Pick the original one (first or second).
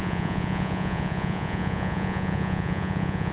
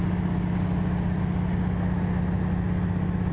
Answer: second